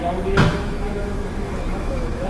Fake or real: fake